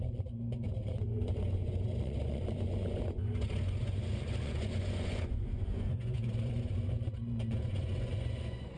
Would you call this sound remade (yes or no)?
yes